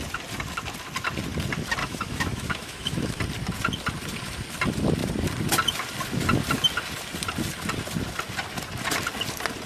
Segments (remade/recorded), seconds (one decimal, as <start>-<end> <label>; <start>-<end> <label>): 0.0-1.8 recorded; 1.8-3.2 remade; 3.2-9.7 recorded